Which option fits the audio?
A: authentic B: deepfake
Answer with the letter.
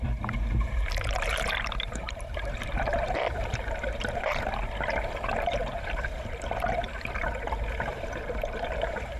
B